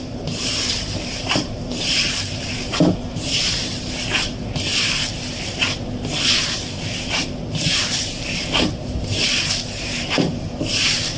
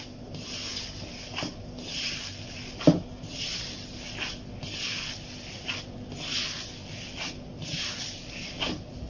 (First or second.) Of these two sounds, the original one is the second